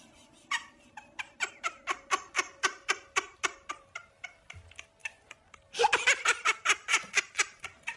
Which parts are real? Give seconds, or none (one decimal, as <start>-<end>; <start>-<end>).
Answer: 0.0-5.0; 5.5-8.0